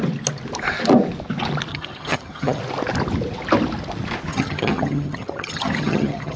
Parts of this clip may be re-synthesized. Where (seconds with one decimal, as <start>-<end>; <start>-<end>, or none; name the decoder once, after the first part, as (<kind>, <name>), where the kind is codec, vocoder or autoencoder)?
1.7-2.6 (vocoder, HiFi-GAN); 4.3-6.4